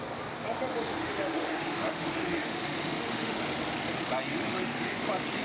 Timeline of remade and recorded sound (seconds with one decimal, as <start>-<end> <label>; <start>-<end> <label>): 0.0-1.0 recorded; 1.0-3.4 remade; 3.4-4.3 recorded; 4.3-5.0 remade; 5.0-5.4 recorded